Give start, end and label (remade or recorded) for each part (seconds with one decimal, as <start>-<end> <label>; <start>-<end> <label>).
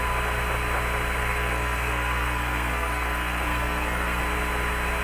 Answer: 0.0-1.2 recorded; 1.2-4.2 remade; 4.2-5.0 recorded